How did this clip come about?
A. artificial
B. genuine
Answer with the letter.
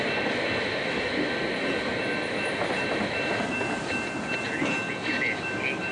B